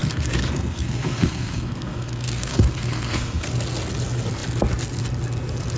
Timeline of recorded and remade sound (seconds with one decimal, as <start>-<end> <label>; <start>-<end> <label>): 0.0-3.5 remade; 3.5-5.8 recorded